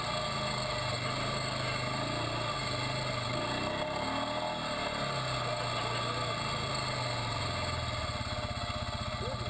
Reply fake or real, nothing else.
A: real